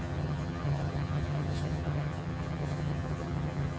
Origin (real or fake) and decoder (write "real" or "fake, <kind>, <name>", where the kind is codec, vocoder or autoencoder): fake, vocoder, HiFi-GAN